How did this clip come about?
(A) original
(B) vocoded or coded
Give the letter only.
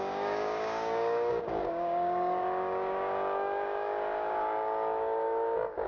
B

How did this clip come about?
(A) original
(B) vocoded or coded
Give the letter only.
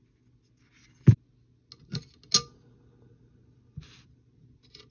A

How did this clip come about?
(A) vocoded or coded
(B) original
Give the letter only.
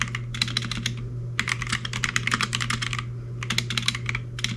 B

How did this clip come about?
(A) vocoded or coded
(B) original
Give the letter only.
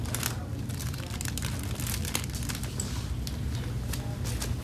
B